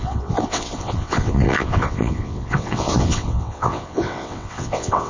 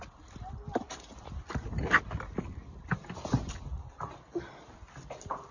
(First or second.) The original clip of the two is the second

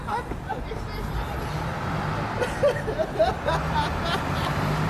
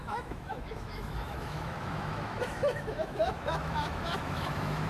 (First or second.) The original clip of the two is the first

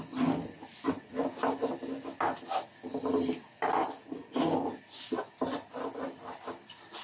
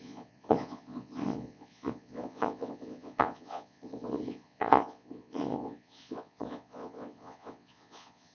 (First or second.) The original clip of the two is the first